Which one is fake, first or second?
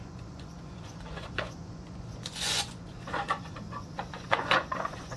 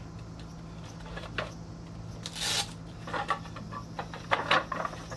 first